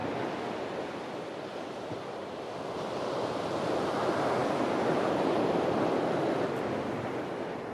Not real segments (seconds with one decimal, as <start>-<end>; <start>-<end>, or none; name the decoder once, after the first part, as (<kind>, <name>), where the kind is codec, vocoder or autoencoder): 4.4-5.8 (vocoder, BigVGAN v2)